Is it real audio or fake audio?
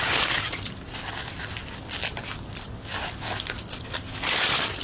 real